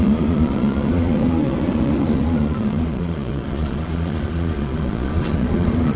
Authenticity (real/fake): fake